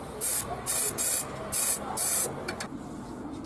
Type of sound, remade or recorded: recorded